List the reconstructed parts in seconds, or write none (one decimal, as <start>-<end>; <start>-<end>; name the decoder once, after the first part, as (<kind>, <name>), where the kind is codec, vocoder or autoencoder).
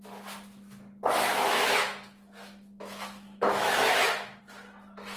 1.3-4.4 (autoencoder, DAC-VAE)